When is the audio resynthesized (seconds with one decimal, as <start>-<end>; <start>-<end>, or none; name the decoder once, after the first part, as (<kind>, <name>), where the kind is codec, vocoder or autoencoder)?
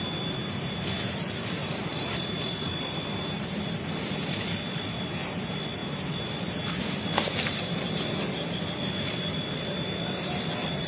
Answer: none